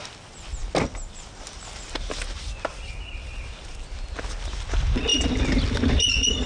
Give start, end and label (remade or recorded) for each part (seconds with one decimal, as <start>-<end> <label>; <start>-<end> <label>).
0.0-6.5 recorded